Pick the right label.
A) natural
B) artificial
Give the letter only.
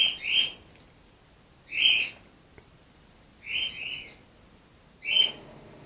A